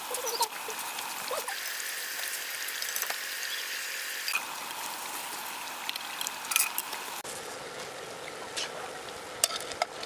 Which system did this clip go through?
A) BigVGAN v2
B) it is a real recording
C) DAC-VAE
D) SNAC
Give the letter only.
B